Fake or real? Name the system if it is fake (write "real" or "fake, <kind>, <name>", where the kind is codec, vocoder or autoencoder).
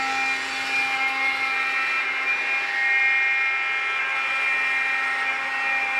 real